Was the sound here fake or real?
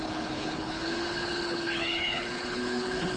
fake